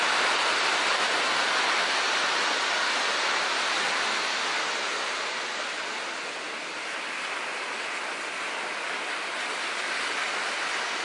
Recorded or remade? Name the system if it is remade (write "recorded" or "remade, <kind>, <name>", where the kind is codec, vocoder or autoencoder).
recorded